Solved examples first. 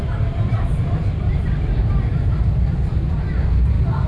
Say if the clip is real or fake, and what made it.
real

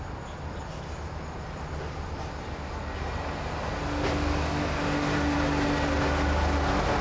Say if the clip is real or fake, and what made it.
real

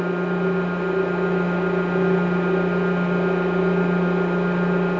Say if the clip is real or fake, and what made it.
real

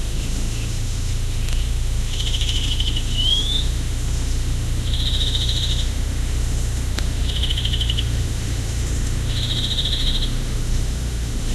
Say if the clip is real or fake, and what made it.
fake, autoencoder, DAC-VAE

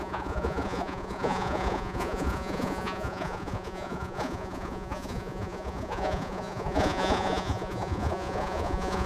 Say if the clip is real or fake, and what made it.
fake, vocoder, Vocos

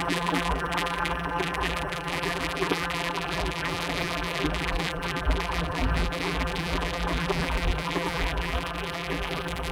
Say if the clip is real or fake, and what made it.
fake, vocoder, BigVGAN v2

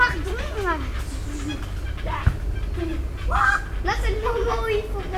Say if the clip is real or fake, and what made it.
real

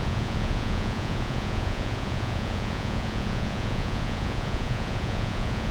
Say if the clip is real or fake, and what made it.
fake, vocoder, Vocos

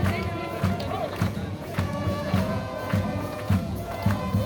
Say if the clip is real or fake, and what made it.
fake, vocoder, Vocos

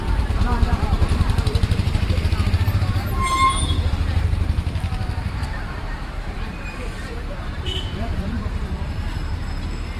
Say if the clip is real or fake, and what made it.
fake, vocoder, BigVGAN v2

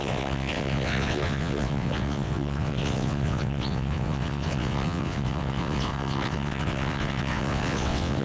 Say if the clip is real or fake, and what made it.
fake, vocoder, WaveNeXt